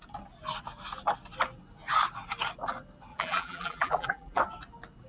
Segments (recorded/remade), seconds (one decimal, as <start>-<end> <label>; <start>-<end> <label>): 0.0-3.1 recorded; 3.1-4.4 remade; 4.4-5.1 recorded